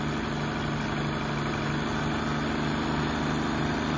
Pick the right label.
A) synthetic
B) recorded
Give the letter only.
B